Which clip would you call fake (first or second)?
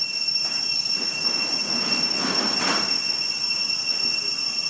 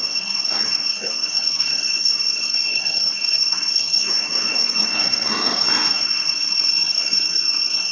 second